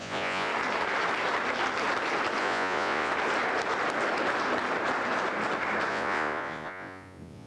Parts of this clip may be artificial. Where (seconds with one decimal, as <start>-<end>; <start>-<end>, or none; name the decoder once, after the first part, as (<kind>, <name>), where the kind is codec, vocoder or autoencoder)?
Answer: 0.0-0.5 (vocoder, Vocos); 2.4-3.1; 5.9-7.5